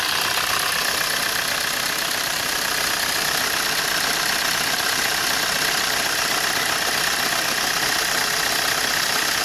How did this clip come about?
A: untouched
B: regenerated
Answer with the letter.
A